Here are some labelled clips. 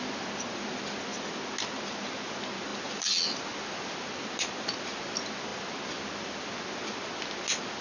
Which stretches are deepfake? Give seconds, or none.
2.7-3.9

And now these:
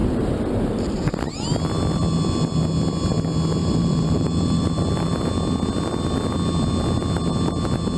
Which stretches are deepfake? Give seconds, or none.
0.0-1.0; 3.6-4.6